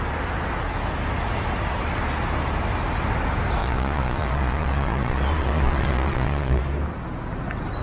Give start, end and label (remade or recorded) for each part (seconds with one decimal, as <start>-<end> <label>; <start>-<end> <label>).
0.0-3.6 recorded; 3.6-6.6 remade; 6.6-7.8 recorded